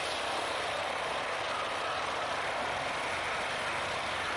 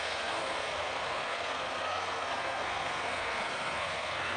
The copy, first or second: second